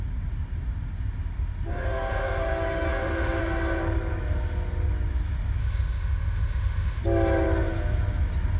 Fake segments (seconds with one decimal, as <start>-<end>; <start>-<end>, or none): 1.7-2.5; 2.9-3.4; 5.6-7.0